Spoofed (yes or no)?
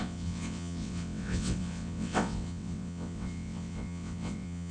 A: yes